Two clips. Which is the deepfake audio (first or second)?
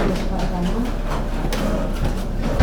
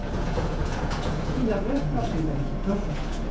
second